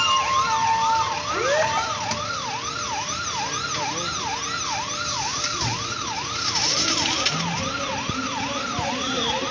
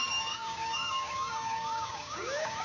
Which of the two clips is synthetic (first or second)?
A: second